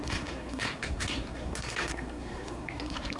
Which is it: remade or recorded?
remade